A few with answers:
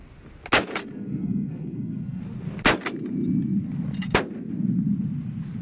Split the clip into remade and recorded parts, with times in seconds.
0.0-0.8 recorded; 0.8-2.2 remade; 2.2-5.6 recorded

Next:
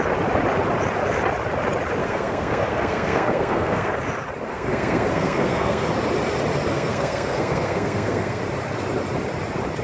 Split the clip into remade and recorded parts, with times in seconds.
0.0-2.0 recorded; 2.0-3.9 remade; 3.9-4.5 recorded; 4.5-5.9 remade; 5.9-6.7 recorded; 6.7-8.4 remade; 8.4-9.8 recorded

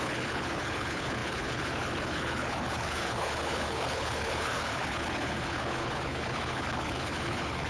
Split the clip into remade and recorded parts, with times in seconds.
0.0-7.7 remade

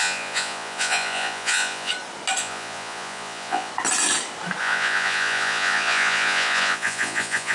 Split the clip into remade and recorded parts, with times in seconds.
0.0-1.9 remade; 1.9-2.4 recorded; 2.4-3.7 remade; 3.7-4.6 recorded; 4.6-7.5 remade

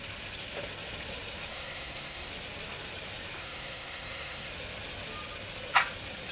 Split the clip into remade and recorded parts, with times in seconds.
0.0-1.5 recorded; 1.5-2.3 remade; 2.3-3.4 recorded; 3.4-4.5 remade; 4.5-6.3 recorded

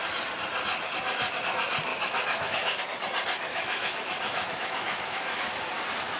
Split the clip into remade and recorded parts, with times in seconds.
0.0-1.9 recorded; 1.9-2.8 remade; 2.8-3.5 recorded; 3.5-5.6 remade; 5.6-6.2 recorded

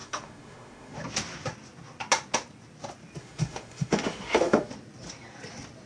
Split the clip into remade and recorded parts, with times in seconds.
0.0-1.0 remade; 1.0-3.2 recorded; 3.2-4.7 remade; 4.7-5.9 recorded

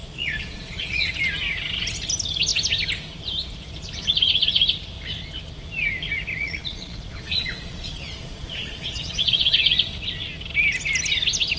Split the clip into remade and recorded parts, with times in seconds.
0.0-1.1 remade; 1.1-6.4 recorded; 6.4-9.6 remade; 9.6-11.6 recorded